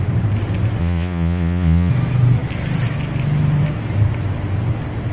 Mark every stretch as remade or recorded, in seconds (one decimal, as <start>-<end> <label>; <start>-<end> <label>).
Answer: 0.0-0.8 recorded; 0.8-1.9 remade; 1.9-5.1 recorded